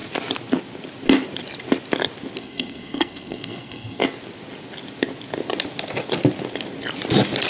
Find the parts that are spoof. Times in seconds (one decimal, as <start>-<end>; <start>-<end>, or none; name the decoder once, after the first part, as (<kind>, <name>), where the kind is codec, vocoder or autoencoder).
2.4-4.0 (codec, SNAC)